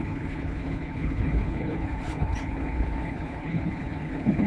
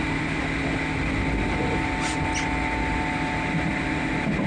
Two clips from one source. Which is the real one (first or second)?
second